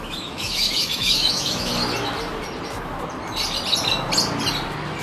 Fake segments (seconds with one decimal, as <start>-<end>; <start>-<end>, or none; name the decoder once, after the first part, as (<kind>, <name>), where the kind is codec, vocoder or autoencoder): 0.0-1.7 (autoencoder, DAC-VAE)